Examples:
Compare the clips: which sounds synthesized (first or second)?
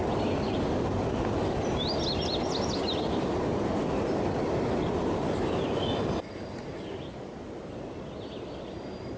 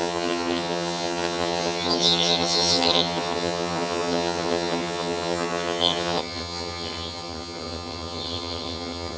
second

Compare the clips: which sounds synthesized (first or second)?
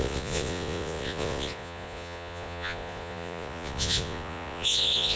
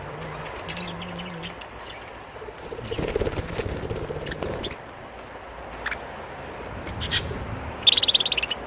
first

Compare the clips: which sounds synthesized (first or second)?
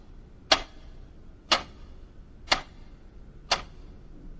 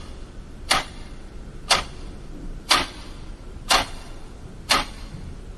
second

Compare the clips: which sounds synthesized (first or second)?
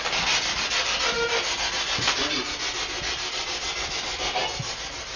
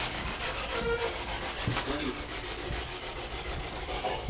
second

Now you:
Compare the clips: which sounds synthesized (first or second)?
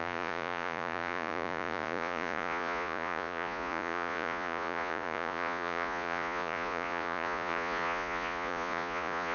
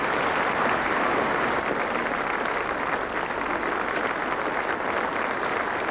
first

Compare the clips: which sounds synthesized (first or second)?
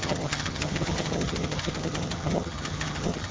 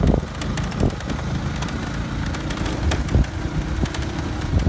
first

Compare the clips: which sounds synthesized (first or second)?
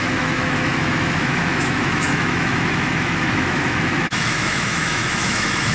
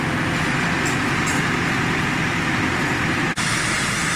first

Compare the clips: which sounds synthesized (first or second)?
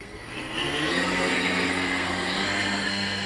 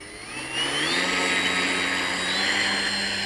first